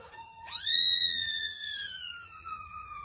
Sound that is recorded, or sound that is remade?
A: remade